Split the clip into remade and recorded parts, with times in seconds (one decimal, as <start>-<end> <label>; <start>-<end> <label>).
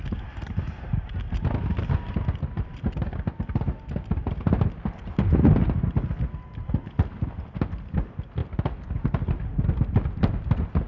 0.0-10.9 recorded